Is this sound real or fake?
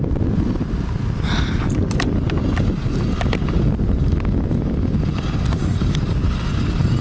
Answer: real